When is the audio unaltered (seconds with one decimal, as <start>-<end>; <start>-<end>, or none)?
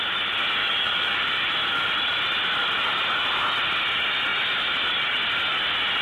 0.0-0.6; 1.2-6.0